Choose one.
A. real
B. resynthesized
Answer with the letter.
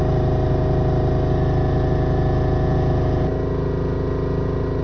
A